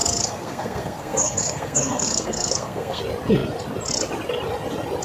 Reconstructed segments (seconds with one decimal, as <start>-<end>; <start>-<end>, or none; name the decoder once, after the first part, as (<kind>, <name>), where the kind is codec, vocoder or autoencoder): 0.0-3.0 (codec, SNAC)